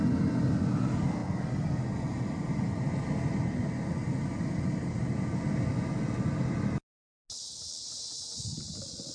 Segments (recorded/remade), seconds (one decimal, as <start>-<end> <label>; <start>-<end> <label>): 0.0-4.0 recorded; 4.0-5.0 remade; 5.0-9.1 recorded